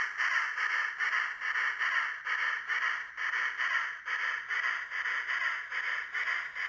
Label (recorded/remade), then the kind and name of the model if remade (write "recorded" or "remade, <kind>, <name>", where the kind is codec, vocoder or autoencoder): recorded